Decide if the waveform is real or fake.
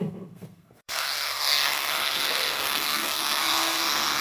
fake